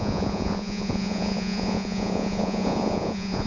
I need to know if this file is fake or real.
fake